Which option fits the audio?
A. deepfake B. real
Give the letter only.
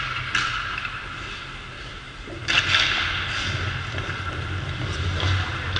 B